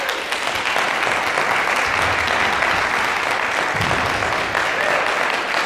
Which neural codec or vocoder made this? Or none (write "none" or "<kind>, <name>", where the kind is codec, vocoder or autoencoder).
none